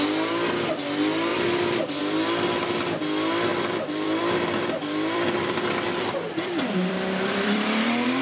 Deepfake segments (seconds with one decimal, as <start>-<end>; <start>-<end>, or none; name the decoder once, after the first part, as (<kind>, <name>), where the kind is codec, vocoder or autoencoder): 1.3-2.0 (vocoder, BigVGAN v2); 3.5-8.2

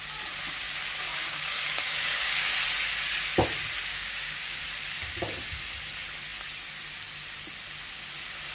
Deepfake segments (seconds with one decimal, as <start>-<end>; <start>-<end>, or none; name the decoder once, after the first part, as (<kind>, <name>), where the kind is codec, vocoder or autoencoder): 1.1-2.5 (codec, DAC); 3.9-4.6

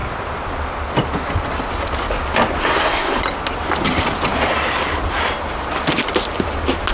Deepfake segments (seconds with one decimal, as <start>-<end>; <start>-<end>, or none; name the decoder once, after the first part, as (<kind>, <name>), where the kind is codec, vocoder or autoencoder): 2.6-3.2 (codec, SNAC)

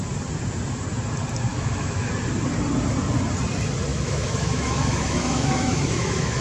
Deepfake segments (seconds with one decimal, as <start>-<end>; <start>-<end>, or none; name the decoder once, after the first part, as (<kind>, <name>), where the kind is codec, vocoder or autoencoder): 1.5-2.1 (autoencoder, DAC-VAE); 3.9-6.4

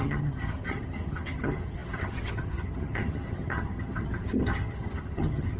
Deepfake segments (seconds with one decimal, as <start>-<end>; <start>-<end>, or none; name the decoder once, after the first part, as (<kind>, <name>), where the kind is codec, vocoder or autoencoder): 0.0-5.6 (vocoder, HiFi-GAN)

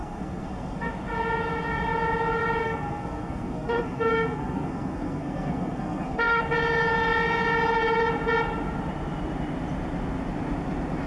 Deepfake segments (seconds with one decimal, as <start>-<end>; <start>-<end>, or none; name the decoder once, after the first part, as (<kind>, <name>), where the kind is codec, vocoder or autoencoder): 0.0-0.9 (codec, SNAC); 2.6-6.4